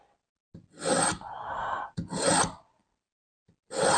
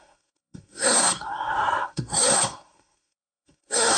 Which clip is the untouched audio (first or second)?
first